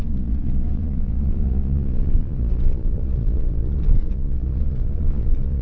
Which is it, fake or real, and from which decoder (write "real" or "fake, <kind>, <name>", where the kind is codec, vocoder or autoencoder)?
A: fake, vocoder, Vocos